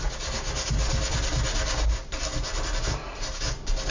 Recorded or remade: recorded